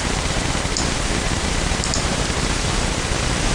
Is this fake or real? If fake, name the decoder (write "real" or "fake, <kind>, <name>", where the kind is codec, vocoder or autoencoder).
fake, vocoder, BigVGAN v2